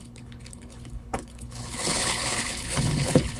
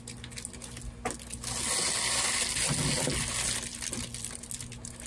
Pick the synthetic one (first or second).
first